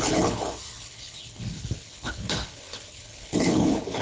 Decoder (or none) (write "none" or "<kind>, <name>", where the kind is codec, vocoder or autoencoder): codec, HILCodec